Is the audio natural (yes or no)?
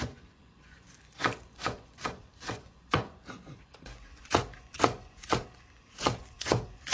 no